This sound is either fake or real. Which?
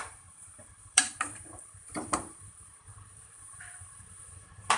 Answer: fake